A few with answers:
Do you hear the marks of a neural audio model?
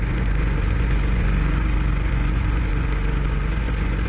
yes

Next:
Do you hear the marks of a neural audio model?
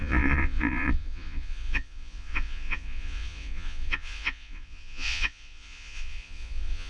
yes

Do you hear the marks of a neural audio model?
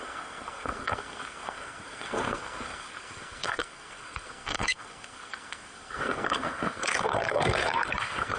yes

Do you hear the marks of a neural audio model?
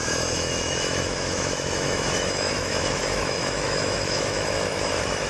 yes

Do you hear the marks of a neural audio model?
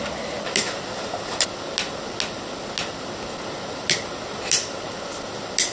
no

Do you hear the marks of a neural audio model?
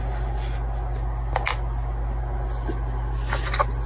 no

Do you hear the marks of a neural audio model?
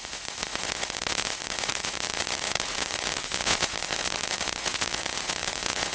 yes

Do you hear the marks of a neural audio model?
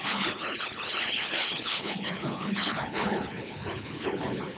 yes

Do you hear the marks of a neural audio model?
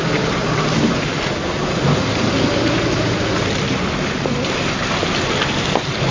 no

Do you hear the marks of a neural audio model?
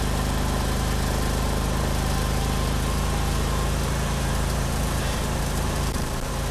yes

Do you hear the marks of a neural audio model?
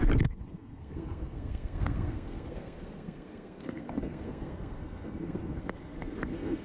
yes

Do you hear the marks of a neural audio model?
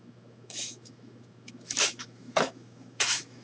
yes